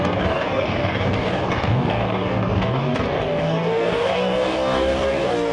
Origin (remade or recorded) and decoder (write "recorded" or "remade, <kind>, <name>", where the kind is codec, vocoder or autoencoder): remade, codec, DAC